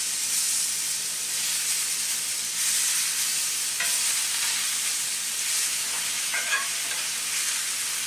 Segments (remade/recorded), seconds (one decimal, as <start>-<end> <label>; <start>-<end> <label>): 0.0-5.6 recorded; 5.6-6.7 remade; 6.7-8.1 recorded